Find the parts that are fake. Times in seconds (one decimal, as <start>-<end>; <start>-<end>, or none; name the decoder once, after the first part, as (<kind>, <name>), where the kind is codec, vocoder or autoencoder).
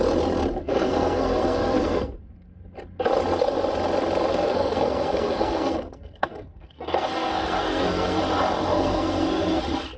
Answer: 0.6-2.2 (codec, SNAC); 4.3-8.2; 8.7-9.6